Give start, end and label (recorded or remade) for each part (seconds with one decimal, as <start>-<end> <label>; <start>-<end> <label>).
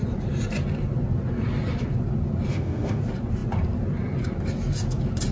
0.0-2.5 recorded; 2.5-3.0 remade; 3.0-5.3 recorded